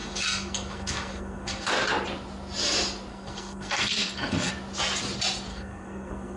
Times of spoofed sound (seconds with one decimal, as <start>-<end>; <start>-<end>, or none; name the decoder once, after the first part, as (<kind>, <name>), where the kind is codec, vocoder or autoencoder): 0.0-1.7 (codec, SNAC); 3.1-4.5; 5.5-6.4